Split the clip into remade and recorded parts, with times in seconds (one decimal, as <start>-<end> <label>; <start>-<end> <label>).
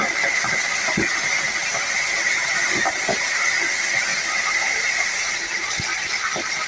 0.0-1.6 recorded; 1.6-3.5 remade; 3.5-4.1 recorded; 4.1-5.8 remade; 5.8-6.7 recorded